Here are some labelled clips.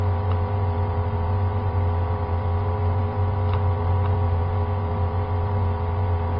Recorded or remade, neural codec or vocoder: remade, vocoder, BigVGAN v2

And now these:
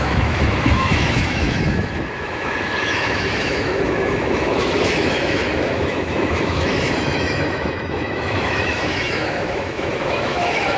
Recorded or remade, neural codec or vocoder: remade, autoencoder, DAC-VAE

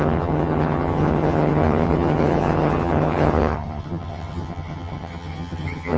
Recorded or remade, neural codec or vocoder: remade, vocoder, HiFi-GAN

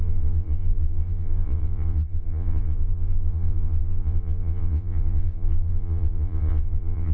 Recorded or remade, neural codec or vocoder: remade, vocoder, Vocos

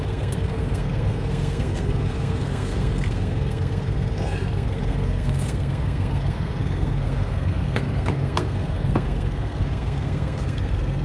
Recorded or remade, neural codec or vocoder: remade, codec, SNAC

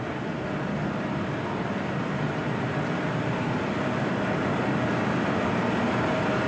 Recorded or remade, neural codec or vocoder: remade, vocoder, BigVGAN v2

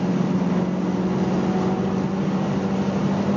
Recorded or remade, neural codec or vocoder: recorded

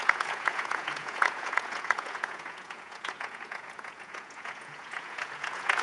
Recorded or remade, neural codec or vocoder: remade, vocoder, Vocos